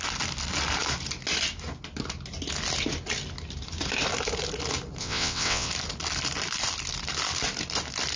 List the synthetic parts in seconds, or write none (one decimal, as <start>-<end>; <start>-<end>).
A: 5.0-5.7

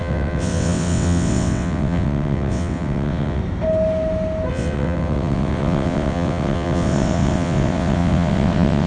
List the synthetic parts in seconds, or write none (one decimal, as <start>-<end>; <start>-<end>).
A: 0.0-3.4; 4.5-8.9

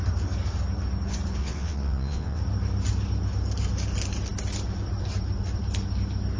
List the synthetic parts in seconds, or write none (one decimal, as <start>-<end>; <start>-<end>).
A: 1.4-2.4